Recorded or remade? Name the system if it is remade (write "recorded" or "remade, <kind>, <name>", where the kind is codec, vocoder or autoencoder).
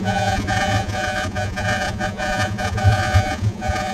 remade, vocoder, Vocos